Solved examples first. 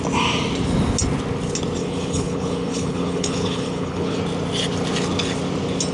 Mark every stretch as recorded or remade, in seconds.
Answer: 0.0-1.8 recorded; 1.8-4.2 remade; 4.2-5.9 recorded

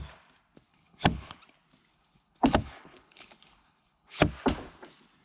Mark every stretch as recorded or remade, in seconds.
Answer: 0.0-0.7 recorded; 0.7-1.4 remade; 1.4-1.9 recorded; 1.9-4.2 remade; 4.2-5.2 recorded

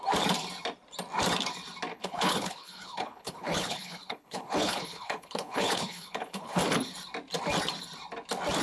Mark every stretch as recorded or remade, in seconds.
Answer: 0.0-1.9 recorded; 1.9-6.6 remade; 6.6-8.6 recorded